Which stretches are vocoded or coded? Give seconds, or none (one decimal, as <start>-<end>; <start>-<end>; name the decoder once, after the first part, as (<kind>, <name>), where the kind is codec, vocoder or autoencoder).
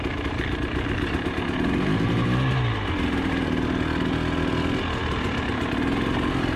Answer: none